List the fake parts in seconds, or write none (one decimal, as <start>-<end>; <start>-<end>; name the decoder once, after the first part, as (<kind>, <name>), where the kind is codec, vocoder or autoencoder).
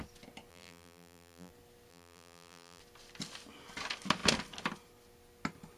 0.5-1.5 (vocoder, BigVGAN v2); 1.9-2.8